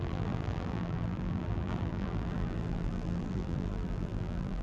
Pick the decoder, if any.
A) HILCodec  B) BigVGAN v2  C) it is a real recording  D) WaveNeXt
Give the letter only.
B